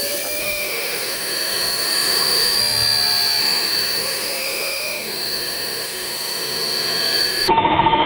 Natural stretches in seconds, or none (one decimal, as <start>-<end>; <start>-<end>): 0.0-0.4; 2.6-3.4